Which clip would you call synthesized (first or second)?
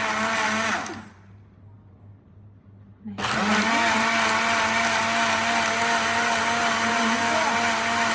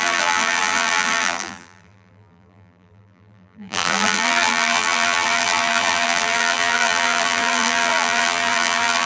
second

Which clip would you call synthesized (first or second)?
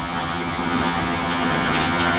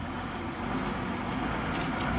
first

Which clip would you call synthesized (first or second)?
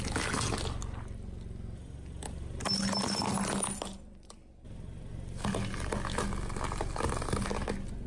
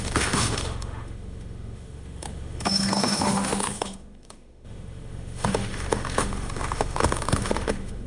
second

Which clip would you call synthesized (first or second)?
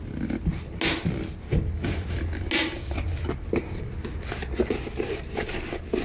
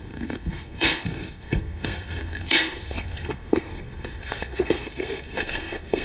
second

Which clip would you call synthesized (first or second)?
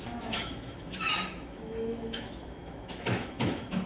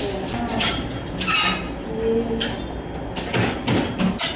first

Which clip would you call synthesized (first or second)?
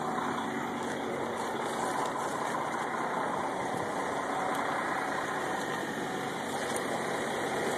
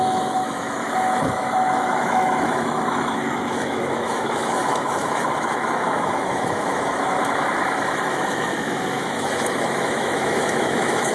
second